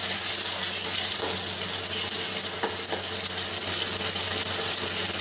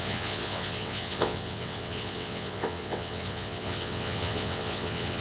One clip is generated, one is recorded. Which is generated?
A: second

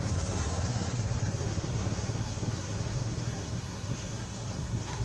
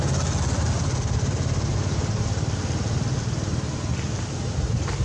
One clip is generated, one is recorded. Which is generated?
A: first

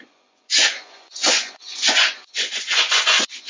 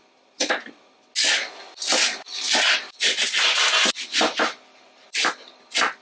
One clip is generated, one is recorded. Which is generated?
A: first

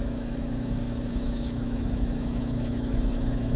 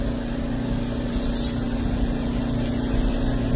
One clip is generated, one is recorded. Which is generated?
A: first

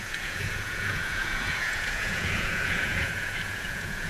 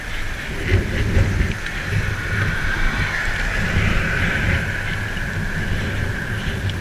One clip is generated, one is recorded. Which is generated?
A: first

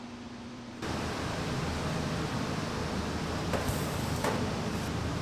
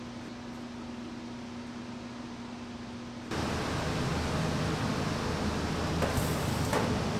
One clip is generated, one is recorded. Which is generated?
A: first